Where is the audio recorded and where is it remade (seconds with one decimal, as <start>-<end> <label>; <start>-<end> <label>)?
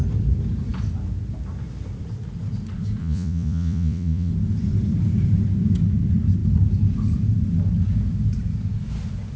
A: 0.0-3.0 recorded; 3.0-4.3 remade; 4.3-9.4 recorded